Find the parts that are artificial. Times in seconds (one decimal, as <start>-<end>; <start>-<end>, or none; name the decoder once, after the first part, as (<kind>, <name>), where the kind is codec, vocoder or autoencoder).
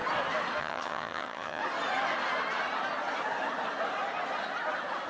0.6-1.6 (vocoder, HiFi-GAN)